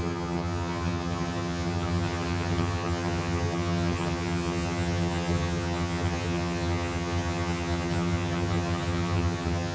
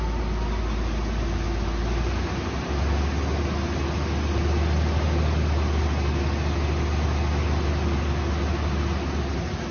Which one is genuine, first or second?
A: second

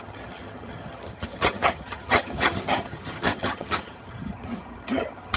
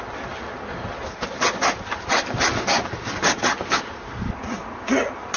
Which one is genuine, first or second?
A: second